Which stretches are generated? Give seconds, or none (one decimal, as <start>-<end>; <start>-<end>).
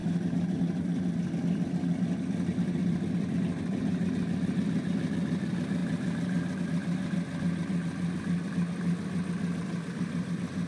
0.0-0.6